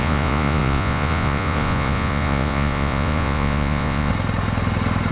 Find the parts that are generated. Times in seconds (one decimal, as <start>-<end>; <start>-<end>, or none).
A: 0.0-4.1